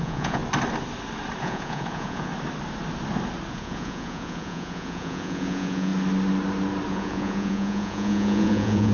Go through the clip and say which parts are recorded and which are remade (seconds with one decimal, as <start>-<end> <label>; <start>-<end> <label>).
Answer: 0.0-0.4 remade; 0.4-1.4 recorded; 1.4-2.3 remade; 2.3-3.5 recorded; 3.5-5.9 remade; 5.9-6.9 recorded; 6.9-8.9 remade